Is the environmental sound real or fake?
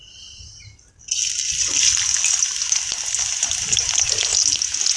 real